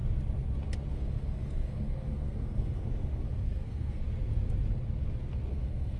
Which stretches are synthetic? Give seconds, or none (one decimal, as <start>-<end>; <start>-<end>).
0.9-4.0; 5.5-6.0